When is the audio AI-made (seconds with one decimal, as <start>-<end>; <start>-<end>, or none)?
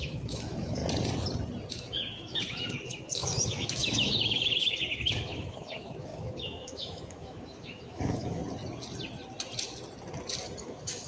0.0-0.8; 1.7-8.4; 10.6-11.1